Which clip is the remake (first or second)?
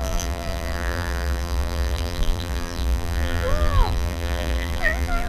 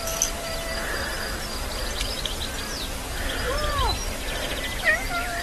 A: first